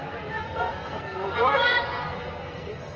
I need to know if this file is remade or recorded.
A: remade